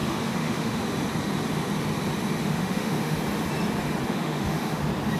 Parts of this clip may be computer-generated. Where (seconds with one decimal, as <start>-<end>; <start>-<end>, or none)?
0.0-0.8; 2.4-3.2; 4.1-4.8